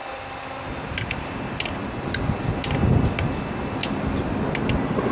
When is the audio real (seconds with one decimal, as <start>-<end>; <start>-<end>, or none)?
0.0-5.1